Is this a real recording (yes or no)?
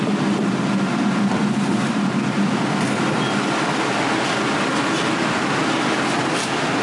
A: yes